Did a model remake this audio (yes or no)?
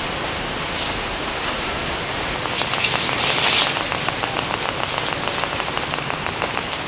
no